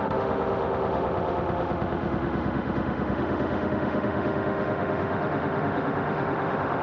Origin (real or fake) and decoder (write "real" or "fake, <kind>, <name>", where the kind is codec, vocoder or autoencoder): fake, autoencoder, DAC-VAE